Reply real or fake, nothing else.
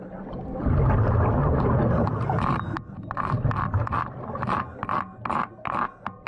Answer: real